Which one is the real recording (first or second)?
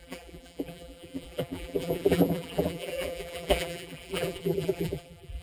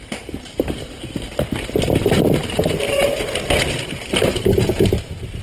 second